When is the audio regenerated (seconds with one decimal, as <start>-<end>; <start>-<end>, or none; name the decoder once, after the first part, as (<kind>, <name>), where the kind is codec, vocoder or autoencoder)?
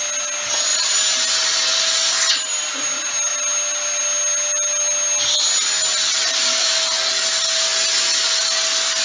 none